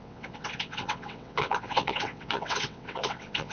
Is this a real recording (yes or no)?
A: no